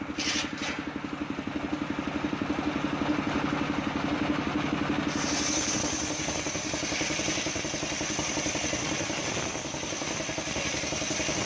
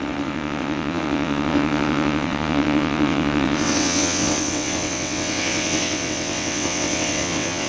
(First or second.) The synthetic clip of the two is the second